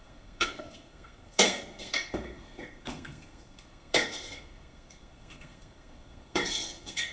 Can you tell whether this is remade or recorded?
remade